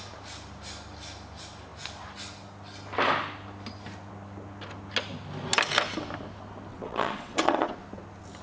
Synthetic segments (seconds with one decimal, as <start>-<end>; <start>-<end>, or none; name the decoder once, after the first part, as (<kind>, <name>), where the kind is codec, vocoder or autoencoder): 6.7-7.7 (vocoder, WaveNeXt)